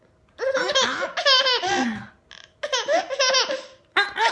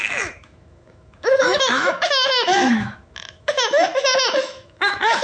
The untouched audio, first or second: first